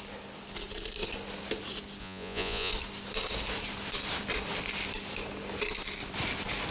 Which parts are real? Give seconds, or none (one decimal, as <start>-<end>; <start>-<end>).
0.0-2.0; 2.7-6.7